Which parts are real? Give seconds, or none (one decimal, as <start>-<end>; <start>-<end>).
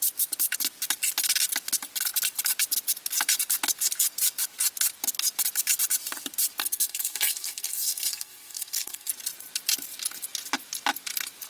0.0-6.6; 9.1-11.5